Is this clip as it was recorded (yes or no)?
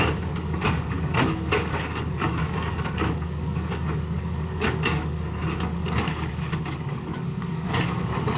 no